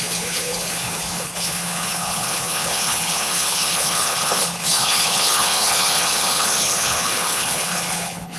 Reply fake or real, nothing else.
fake